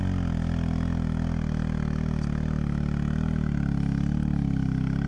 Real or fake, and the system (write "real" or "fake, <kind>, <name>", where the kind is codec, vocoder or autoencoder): real